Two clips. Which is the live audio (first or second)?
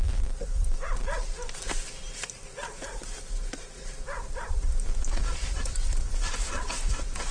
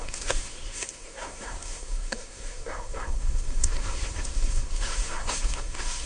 first